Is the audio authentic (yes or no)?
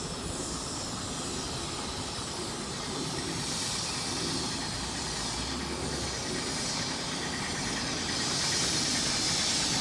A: yes